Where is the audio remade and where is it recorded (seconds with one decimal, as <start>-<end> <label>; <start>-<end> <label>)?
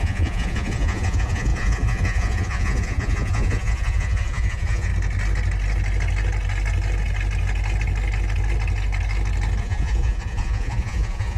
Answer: 0.0-4.9 remade; 4.9-9.6 recorded; 9.6-11.4 remade